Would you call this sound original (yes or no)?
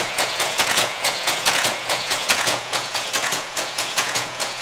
no